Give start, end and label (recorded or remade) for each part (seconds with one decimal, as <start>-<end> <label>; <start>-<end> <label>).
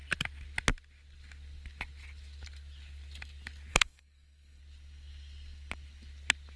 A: 0.0-3.7 recorded; 3.7-4.6 remade; 4.6-6.6 recorded